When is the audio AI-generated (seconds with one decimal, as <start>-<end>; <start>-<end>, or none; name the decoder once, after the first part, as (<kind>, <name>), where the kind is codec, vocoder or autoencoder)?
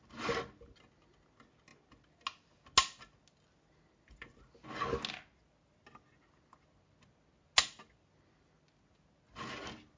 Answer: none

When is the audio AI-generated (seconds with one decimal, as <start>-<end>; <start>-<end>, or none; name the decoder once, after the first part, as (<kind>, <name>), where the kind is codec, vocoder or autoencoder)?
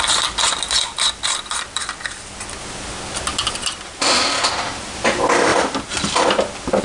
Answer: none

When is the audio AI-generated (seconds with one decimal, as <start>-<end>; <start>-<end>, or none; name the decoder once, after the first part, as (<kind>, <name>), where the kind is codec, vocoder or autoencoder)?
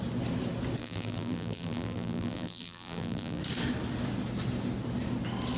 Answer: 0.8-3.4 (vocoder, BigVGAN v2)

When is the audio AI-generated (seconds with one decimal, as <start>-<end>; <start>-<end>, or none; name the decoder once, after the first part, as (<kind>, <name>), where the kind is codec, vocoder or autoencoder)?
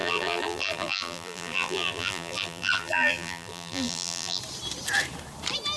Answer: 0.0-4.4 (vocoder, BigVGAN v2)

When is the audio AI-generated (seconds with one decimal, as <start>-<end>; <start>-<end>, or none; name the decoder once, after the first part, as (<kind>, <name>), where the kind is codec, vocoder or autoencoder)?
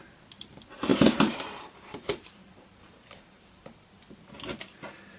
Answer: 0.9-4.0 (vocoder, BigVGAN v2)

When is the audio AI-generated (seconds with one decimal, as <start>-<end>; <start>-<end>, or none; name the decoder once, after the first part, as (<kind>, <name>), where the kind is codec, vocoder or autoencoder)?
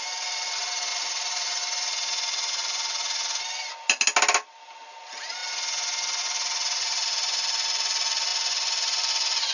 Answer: 0.9-1.6 (vocoder, BigVGAN v2); 2.6-3.2; 8.3-9.1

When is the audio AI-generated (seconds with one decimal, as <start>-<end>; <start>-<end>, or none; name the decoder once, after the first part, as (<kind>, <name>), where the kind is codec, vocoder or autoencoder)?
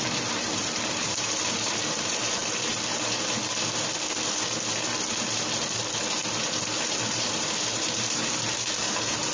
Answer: 0.0-2.4 (vocoder, BigVGAN v2); 7.1-9.3